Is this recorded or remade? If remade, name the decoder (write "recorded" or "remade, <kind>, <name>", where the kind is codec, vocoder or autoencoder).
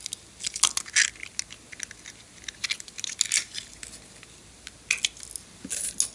recorded